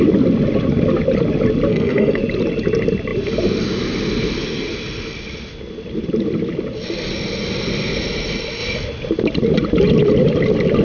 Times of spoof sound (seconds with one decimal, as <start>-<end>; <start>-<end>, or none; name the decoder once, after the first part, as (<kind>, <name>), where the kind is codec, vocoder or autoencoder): 1.7-2.2 (codec, SNAC)